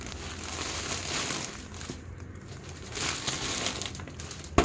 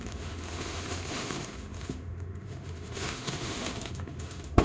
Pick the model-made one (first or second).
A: second